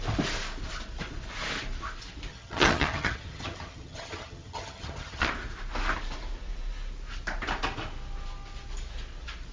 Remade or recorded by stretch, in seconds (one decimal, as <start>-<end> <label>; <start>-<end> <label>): 0.0-2.3 recorded; 2.3-5.3 remade; 5.3-9.5 recorded